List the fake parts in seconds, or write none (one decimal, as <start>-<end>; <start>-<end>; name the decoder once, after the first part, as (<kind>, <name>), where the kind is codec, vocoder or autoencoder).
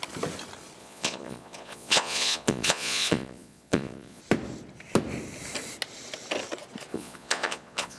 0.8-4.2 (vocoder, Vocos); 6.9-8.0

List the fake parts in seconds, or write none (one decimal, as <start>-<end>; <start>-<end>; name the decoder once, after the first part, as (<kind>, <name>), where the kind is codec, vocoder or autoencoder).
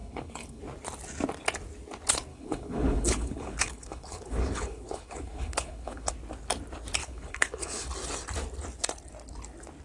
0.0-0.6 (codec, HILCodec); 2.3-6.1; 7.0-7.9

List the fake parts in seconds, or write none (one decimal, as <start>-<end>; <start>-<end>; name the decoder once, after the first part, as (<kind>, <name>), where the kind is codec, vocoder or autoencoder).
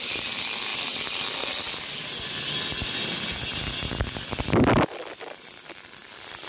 none